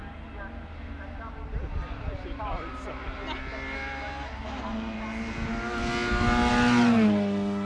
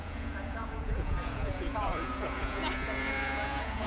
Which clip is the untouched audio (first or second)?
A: first